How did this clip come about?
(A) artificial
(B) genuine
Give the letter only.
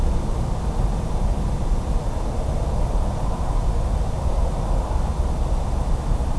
B